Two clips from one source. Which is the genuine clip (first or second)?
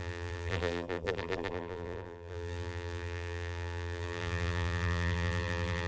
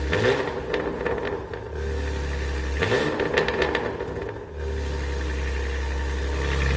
second